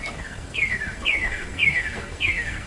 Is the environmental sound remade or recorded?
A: remade